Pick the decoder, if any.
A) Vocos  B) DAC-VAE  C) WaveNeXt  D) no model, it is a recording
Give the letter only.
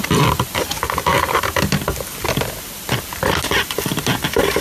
D